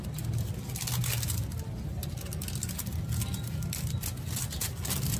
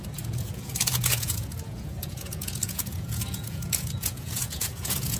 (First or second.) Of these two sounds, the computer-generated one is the second